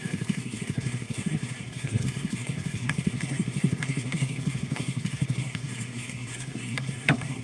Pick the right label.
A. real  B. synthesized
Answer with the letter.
B